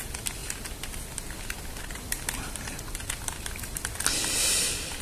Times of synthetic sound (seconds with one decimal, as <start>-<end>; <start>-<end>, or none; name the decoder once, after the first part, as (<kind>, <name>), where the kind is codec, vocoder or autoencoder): none